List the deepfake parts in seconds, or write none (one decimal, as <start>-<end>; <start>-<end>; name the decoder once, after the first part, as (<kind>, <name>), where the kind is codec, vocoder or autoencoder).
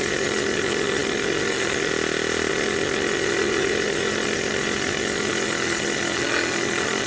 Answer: 0.0-1.9 (vocoder, HiFi-GAN); 2.5-7.1